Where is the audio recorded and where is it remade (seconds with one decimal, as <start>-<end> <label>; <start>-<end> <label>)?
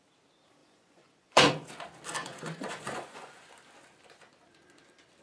0.0-0.6 recorded; 0.6-1.7 remade; 1.7-2.2 recorded; 2.2-3.5 remade; 3.5-5.2 recorded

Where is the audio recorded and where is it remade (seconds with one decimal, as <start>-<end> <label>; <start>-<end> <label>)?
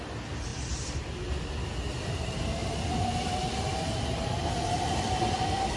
0.0-0.5 recorded; 0.5-1.4 remade; 1.4-5.8 recorded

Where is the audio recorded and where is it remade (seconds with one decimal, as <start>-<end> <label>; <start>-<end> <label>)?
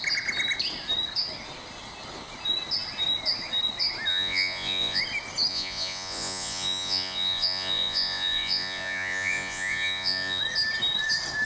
0.0-4.1 recorded; 4.1-5.0 remade; 5.0-5.5 recorded; 5.5-10.4 remade; 10.4-11.5 recorded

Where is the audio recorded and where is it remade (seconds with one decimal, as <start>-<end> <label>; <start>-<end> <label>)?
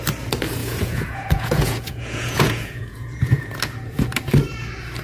0.0-0.6 recorded; 0.6-3.6 remade; 3.6-5.0 recorded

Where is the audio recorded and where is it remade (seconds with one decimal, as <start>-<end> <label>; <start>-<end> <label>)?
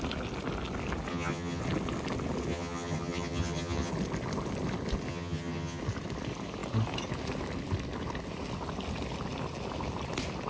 0.0-1.1 recorded; 1.1-1.6 remade; 1.6-2.5 recorded; 2.5-3.9 remade; 3.9-5.1 recorded; 5.1-5.8 remade; 5.8-10.5 recorded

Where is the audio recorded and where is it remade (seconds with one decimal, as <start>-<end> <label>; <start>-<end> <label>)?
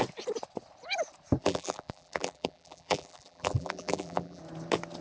0.0-1.4 recorded; 1.4-4.4 remade; 4.4-5.0 recorded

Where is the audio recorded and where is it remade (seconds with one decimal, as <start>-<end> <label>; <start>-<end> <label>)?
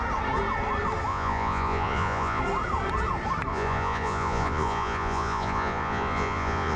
0.0-1.1 recorded; 1.1-2.4 remade; 2.4-3.5 recorded; 3.5-6.8 remade